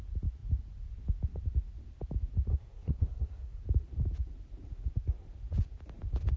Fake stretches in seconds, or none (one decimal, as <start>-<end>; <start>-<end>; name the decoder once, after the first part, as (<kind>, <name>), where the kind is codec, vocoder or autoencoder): 2.5-3.6 (codec, SNAC)